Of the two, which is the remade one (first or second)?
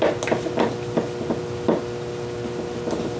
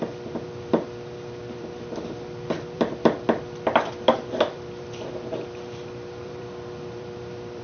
second